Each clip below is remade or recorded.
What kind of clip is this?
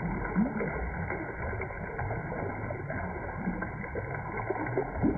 recorded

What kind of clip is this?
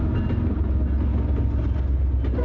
recorded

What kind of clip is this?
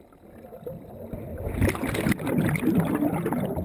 recorded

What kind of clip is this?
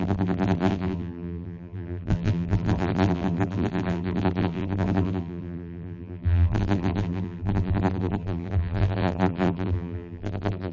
remade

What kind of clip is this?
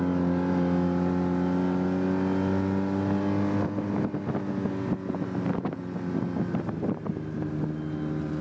recorded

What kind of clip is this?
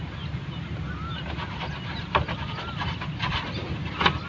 recorded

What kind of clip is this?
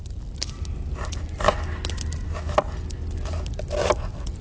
recorded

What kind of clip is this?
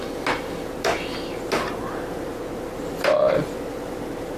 recorded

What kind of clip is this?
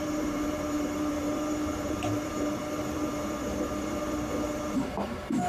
remade